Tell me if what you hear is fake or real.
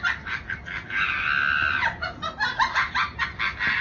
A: real